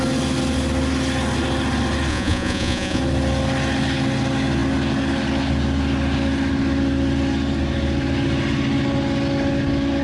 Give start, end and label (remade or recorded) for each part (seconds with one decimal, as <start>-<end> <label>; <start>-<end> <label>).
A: 0.0-2.1 recorded; 2.1-3.0 remade; 3.0-10.0 recorded